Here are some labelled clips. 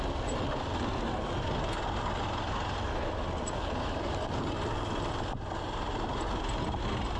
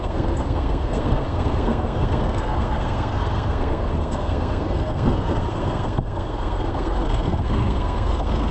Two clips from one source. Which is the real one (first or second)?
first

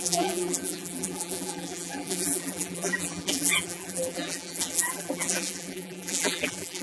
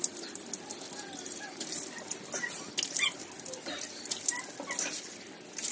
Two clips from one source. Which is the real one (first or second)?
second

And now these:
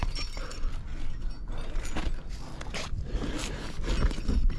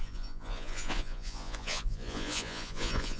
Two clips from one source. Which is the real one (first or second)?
first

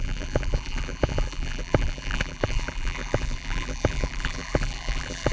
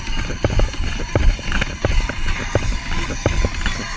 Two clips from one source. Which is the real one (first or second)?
second